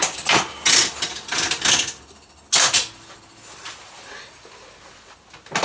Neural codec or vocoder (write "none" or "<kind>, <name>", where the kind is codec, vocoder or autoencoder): none